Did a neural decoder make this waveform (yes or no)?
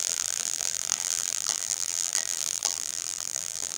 yes